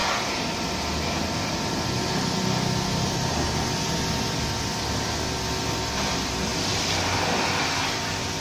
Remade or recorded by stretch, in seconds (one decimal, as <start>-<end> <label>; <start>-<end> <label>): 0.0-8.4 recorded